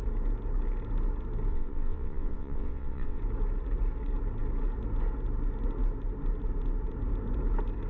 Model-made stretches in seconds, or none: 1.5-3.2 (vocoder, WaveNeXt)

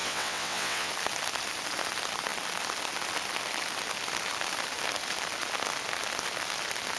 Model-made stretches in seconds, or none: 0.0-0.9 (vocoder, WaveNeXt)

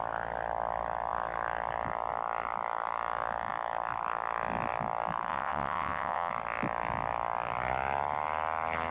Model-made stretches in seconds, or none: 5.3-6.3 (vocoder, WaveNeXt)

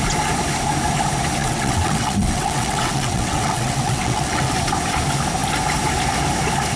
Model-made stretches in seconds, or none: 1.4-4.5 (vocoder, WaveNeXt)

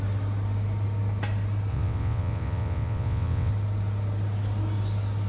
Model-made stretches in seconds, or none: 1.7-3.5 (vocoder, WaveNeXt)

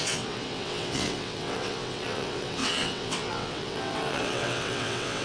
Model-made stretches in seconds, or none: 0.0-5.2 (vocoder, WaveNeXt)